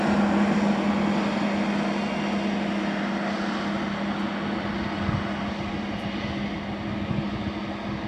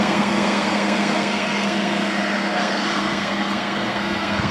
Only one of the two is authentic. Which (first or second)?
first